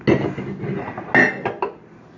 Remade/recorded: recorded